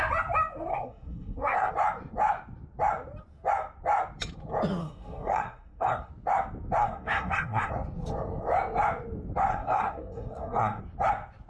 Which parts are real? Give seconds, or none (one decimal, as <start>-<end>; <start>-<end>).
0.0-0.7; 1.7-4.8; 6.1-6.8; 7.7-9.5; 10.8-11.5